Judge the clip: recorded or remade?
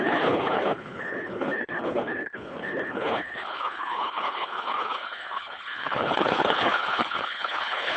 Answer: remade